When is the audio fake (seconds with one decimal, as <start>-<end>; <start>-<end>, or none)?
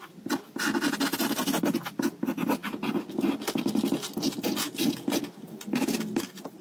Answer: none